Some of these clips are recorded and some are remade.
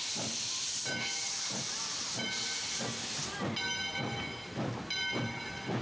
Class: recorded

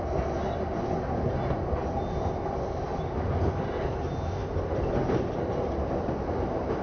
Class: recorded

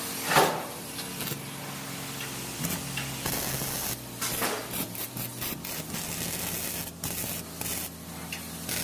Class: recorded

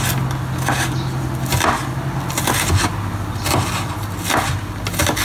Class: recorded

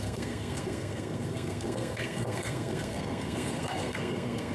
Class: remade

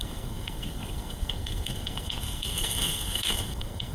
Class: remade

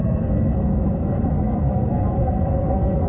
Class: remade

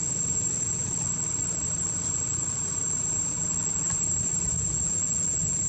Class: recorded